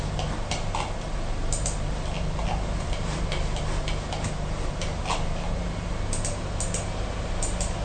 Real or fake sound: real